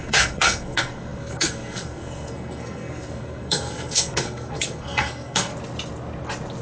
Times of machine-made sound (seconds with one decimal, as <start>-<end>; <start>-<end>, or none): 0.0-5.5